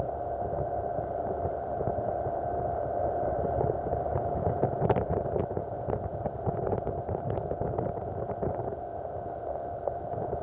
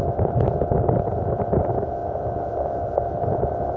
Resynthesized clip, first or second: first